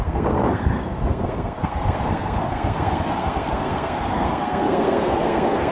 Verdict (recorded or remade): remade